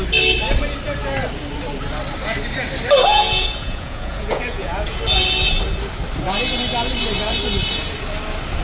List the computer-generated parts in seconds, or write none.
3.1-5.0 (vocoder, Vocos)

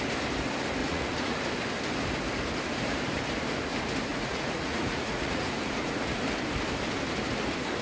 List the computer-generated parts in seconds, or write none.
0.8-1.4 (vocoder, Vocos); 4.1-6.2

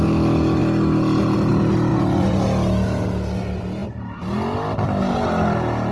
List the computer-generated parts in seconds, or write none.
1.9-2.4 (vocoder, Vocos)

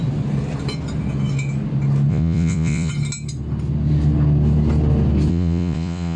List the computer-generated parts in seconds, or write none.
2.1-2.9 (vocoder, Vocos); 5.3-6.2

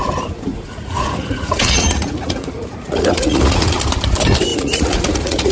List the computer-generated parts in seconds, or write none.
0.5-3.8 (vocoder, Vocos); 4.5-5.5

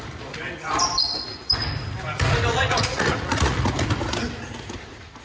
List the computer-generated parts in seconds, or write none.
2.5-3.7 (vocoder, Vocos)

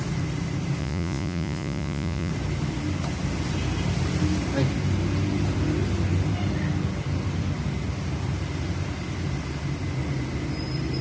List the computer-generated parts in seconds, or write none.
0.8-2.3 (vocoder, Vocos)

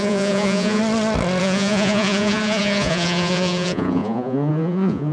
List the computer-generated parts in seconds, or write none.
0.0-0.8 (vocoder, Vocos); 1.4-5.1